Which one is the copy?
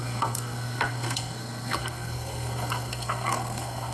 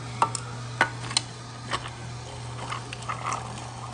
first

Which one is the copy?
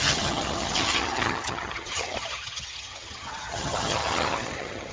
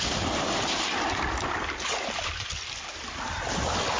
first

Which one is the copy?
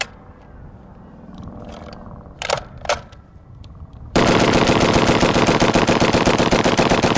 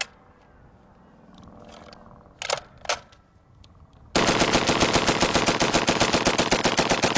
first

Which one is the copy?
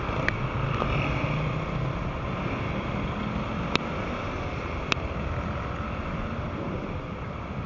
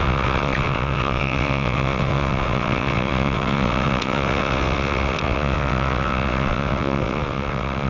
second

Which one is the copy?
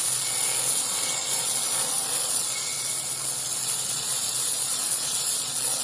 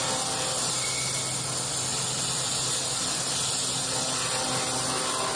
first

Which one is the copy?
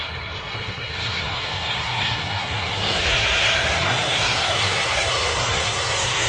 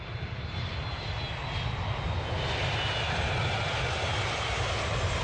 first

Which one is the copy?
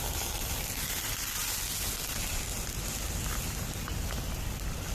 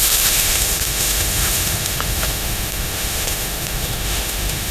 second